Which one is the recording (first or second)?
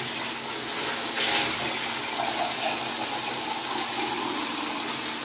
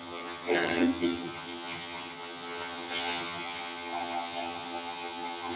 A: first